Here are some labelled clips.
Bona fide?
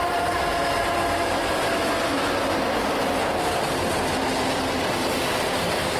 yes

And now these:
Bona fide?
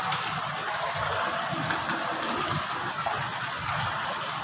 yes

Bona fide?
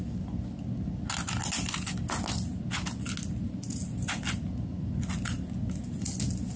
yes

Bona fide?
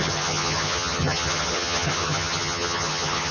no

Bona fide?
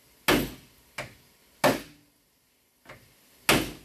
yes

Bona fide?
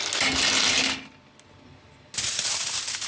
yes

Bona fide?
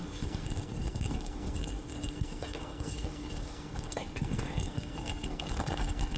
no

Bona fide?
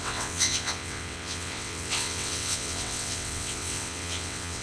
no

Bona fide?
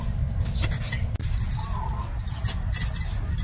yes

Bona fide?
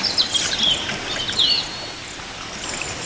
yes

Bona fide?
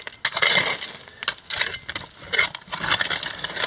yes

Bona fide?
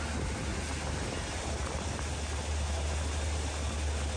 yes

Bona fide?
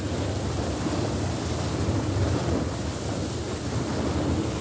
yes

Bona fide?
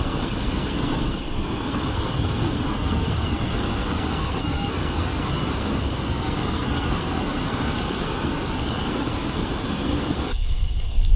no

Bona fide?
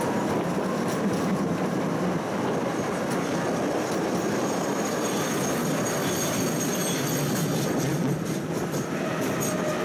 yes